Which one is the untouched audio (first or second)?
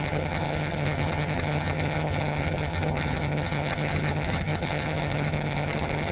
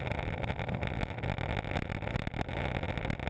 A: second